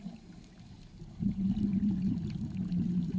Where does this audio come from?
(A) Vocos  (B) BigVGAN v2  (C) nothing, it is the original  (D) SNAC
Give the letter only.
B